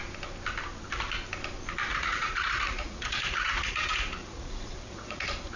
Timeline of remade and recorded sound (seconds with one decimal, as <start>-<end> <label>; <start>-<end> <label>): 0.0-1.9 recorded; 1.9-5.6 remade